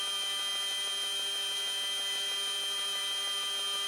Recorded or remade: recorded